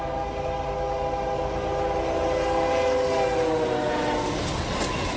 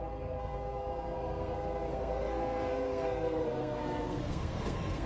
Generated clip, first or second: second